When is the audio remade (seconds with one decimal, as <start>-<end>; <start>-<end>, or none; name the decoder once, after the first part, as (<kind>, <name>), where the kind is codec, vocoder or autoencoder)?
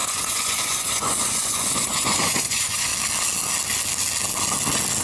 0.0-2.9 (vocoder, Vocos)